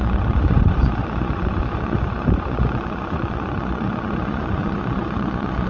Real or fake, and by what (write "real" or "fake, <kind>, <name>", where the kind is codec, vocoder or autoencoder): fake, vocoder, Vocos